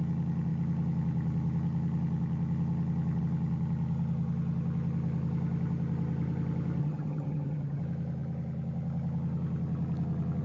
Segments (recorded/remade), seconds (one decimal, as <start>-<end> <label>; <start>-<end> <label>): 0.0-6.8 recorded; 6.8-7.8 remade; 7.8-10.4 recorded